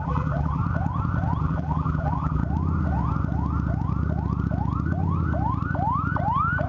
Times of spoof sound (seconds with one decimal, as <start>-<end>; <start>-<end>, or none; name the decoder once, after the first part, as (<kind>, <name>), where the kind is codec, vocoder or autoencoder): 0.0-0.6 (vocoder, BigVGAN v2); 1.4-2.4

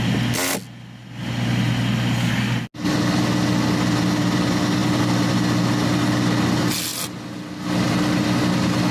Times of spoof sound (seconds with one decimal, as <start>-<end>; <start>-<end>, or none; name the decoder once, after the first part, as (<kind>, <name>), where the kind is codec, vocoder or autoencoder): none

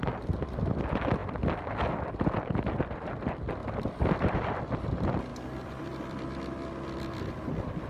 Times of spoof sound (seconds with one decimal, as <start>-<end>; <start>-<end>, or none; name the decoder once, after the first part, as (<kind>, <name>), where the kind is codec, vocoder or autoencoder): 3.6-4.6 (vocoder, BigVGAN v2); 5.3-7.3

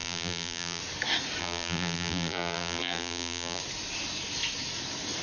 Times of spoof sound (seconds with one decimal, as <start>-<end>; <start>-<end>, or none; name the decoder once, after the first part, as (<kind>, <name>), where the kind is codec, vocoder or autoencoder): 0.0-0.8 (vocoder, BigVGAN v2); 1.4-3.6